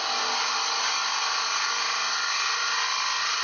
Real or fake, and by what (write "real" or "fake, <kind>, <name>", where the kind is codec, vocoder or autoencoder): real